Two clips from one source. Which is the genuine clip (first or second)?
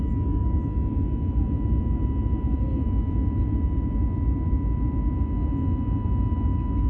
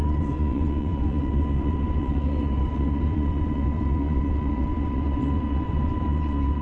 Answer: first